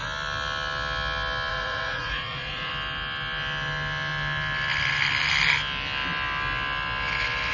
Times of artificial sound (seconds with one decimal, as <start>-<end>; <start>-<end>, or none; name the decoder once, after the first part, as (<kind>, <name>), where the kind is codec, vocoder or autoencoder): 1.5-2.7 (vocoder, Vocos)